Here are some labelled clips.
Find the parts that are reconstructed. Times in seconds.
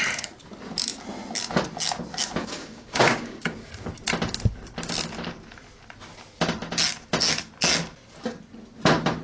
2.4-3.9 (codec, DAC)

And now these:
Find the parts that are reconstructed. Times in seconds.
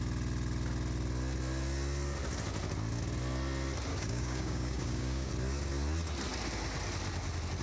3.9-5.3 (codec, DAC)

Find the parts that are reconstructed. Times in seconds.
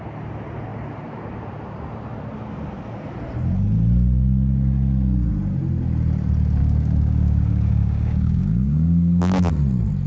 6.6-9.5 (codec, DAC)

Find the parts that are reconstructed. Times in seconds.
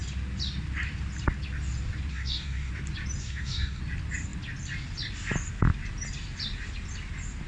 2.1-2.7 (codec, DAC); 3.2-3.8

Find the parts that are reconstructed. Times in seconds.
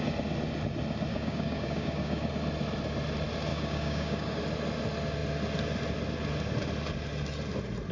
1.1-2.3 (codec, DAC); 3.5-4.4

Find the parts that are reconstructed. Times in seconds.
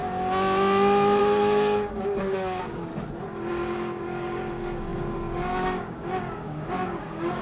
1.2-2.9 (codec, DAC); 3.5-7.4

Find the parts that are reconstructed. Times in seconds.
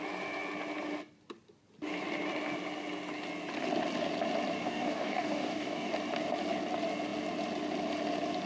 4.6-5.9 (codec, DAC)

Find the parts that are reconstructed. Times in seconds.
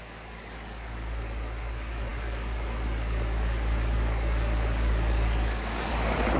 0.0-6.4 (codec, DAC)